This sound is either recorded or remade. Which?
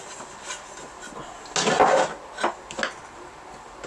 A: recorded